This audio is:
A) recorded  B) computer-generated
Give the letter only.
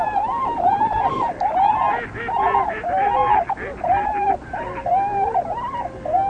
A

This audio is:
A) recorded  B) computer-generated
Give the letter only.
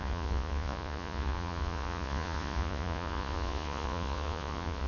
B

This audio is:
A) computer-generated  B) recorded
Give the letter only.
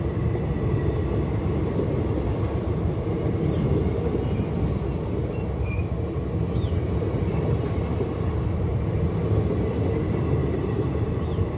B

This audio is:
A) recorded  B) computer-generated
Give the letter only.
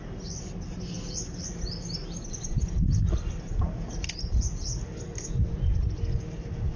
A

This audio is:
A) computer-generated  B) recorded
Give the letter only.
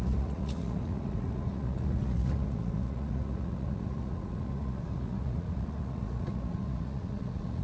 A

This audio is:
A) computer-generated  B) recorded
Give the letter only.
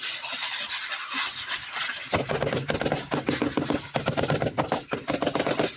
B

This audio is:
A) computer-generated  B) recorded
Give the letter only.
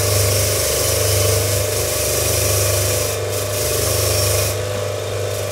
B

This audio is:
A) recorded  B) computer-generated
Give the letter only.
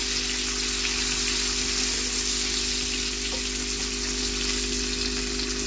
A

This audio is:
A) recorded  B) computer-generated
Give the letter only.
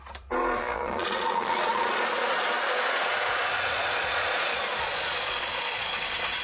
B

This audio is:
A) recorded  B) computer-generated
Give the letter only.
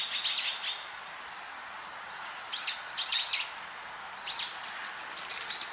A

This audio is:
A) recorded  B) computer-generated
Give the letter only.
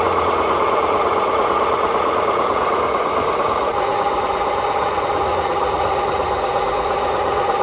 B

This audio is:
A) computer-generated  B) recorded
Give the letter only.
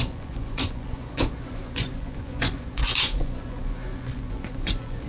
A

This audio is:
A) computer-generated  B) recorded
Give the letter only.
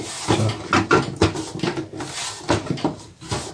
B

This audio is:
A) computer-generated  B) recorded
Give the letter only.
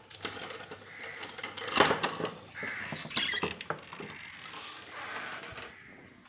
B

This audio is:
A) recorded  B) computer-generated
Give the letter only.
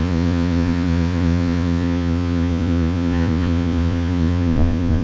B